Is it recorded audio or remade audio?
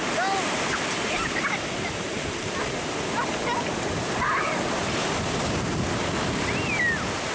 recorded